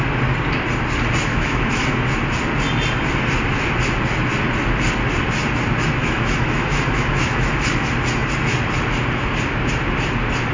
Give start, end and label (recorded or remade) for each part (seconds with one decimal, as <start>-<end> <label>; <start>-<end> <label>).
0.0-1.3 recorded; 1.3-2.1 remade; 2.1-6.0 recorded; 6.0-7.5 remade; 7.5-10.5 recorded